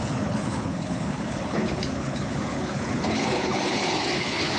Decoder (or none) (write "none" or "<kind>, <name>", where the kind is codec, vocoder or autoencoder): codec, HILCodec